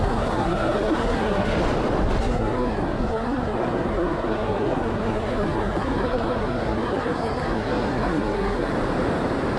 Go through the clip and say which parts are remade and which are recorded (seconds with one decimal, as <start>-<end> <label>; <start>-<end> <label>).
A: 0.0-1.6 remade; 1.6-2.2 recorded; 2.2-8.7 remade; 8.7-9.6 recorded